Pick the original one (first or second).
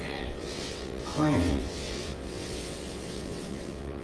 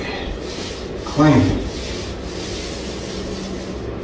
second